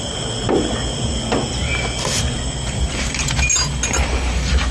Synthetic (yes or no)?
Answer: no